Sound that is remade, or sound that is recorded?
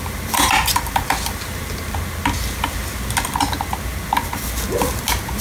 recorded